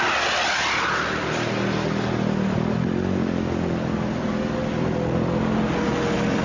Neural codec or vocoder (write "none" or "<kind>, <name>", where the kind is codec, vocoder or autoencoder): none